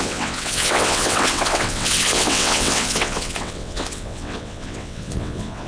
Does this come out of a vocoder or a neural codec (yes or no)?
yes